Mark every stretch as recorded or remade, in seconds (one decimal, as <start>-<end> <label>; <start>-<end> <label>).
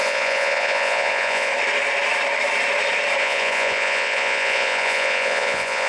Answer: 0.0-1.5 remade; 1.5-3.2 recorded; 3.2-5.9 remade